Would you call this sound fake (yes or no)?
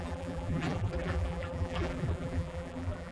yes